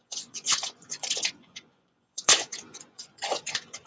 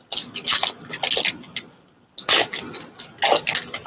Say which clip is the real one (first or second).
second